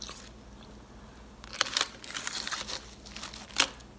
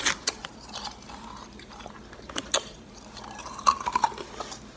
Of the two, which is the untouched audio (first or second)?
first